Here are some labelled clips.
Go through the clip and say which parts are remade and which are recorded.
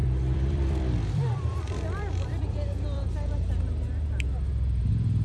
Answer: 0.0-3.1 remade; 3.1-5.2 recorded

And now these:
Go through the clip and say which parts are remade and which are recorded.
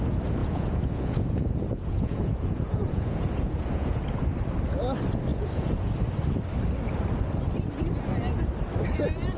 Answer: 0.0-0.4 recorded; 0.4-4.0 remade; 4.0-5.3 recorded; 5.3-5.9 remade; 5.9-9.4 recorded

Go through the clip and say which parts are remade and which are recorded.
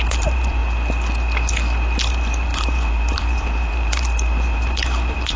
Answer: 0.0-0.6 remade; 0.6-2.1 recorded; 2.1-5.4 remade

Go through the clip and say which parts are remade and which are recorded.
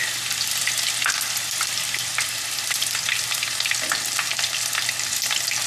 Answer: 0.0-5.7 recorded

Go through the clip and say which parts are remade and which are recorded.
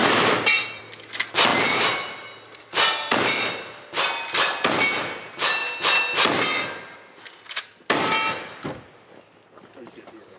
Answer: 0.0-0.8 remade; 0.8-1.5 recorded; 1.5-3.5 remade; 3.5-10.4 recorded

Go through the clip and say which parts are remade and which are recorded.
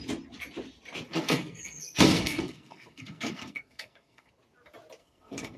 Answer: 0.0-1.1 recorded; 1.1-4.3 remade; 4.3-5.0 recorded; 5.0-5.6 remade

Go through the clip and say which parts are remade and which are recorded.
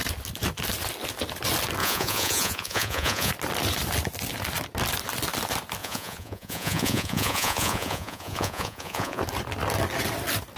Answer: 0.0-1.8 recorded; 1.8-3.3 remade; 3.3-5.8 recorded; 5.8-9.2 remade; 9.2-10.6 recorded